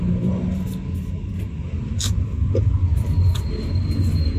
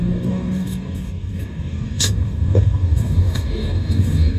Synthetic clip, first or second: second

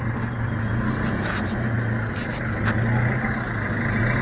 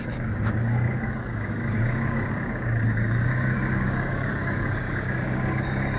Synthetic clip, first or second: second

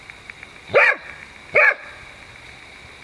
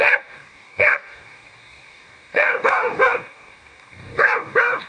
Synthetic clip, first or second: second